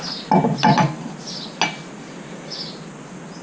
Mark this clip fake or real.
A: real